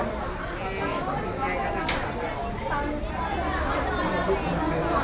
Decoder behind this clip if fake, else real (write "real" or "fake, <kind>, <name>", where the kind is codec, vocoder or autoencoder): real